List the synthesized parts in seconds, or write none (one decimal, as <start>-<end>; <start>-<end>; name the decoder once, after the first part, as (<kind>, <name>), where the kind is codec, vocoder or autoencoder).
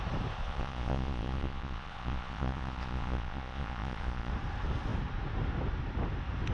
0.4-4.3 (vocoder, Vocos)